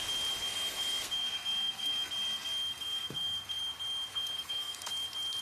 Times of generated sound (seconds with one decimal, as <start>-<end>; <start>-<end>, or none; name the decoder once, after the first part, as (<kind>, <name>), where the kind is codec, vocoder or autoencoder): 0.5-2.1 (codec, SNAC); 2.7-3.6; 4.1-4.9